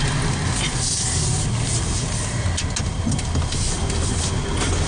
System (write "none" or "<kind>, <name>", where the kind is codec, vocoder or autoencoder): none